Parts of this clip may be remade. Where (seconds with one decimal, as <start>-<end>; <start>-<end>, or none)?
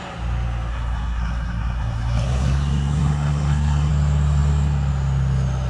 0.7-3.9